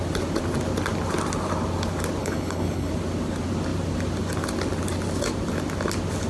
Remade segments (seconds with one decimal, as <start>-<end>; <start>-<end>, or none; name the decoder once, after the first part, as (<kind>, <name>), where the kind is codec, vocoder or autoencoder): 2.2-2.9 (codec, HILCodec)